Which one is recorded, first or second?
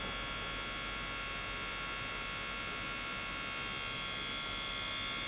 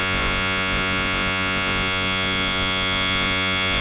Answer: first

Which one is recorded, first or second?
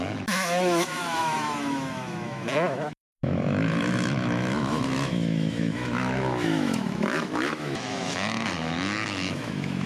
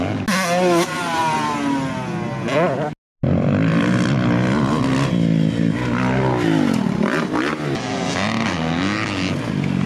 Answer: second